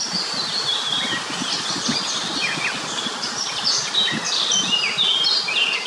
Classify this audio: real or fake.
real